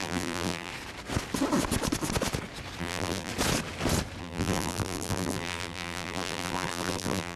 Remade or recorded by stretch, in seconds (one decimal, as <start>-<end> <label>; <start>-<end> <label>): 0.0-0.7 remade; 0.7-2.8 recorded; 2.8-3.3 remade; 3.3-4.2 recorded; 4.2-7.4 remade